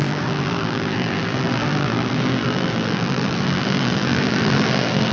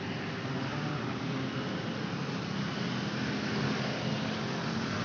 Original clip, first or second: second